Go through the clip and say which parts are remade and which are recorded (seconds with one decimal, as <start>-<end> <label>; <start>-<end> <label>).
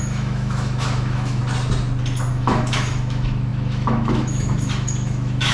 0.0-1.4 remade; 1.4-2.3 recorded; 2.3-5.5 remade